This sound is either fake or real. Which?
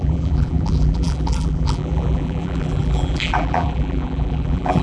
fake